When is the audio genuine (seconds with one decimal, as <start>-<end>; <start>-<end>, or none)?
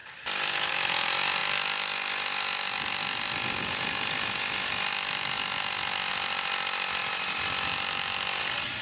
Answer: 0.7-8.8